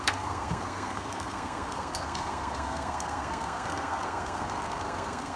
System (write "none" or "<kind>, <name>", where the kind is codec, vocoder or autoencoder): codec, SNAC